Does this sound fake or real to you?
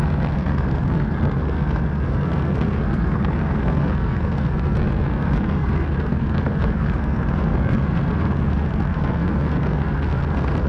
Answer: fake